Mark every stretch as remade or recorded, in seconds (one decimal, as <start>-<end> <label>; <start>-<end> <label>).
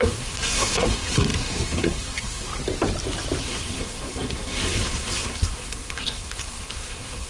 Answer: 0.0-2.5 remade; 2.5-3.4 recorded; 3.4-7.3 remade